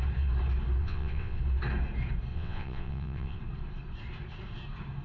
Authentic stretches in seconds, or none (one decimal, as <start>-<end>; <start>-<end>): 0.0-0.8; 1.4-2.3; 3.4-5.0